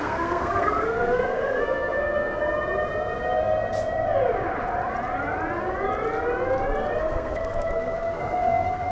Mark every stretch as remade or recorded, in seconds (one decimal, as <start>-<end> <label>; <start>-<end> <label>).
0.0-2.4 remade; 2.4-7.0 recorded; 7.0-8.9 remade